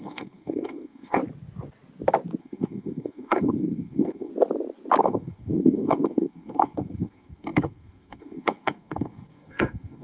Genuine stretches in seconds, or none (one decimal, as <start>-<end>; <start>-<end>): 1.2-2.4; 4.3-5.0